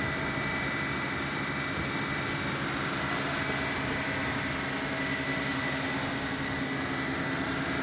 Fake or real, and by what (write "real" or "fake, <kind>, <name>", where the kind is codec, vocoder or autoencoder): real